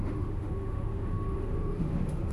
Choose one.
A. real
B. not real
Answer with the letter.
B